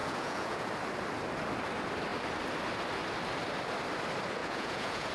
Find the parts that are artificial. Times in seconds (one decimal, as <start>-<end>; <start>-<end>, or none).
0.0-0.7; 4.4-5.1